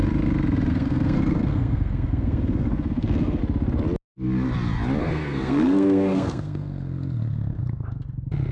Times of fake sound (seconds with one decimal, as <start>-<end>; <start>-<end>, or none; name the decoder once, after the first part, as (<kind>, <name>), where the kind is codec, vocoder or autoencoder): 0.7-3.4 (codec, SNAC); 5.0-7.6